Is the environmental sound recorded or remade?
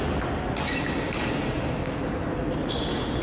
recorded